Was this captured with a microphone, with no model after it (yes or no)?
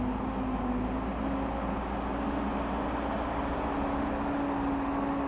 yes